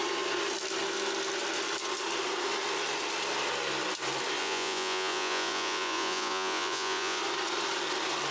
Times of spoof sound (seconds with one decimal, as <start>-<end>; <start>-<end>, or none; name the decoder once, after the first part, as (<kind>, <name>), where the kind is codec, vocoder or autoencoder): 4.4-7.2 (vocoder, Vocos)